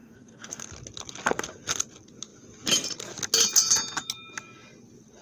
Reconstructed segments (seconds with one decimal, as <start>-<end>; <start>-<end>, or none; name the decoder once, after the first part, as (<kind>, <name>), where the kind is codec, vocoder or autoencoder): 0.0-0.6 (codec, DAC)